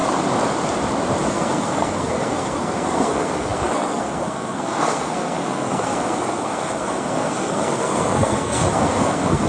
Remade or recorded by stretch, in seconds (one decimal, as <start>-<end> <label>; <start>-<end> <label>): 0.0-1.3 recorded; 1.3-9.5 remade